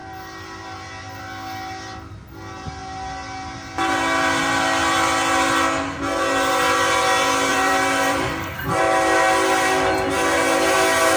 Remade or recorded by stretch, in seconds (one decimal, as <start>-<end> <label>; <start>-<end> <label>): 0.0-7.5 recorded; 7.5-8.8 remade; 8.8-11.2 recorded